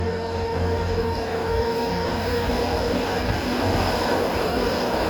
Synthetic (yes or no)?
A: yes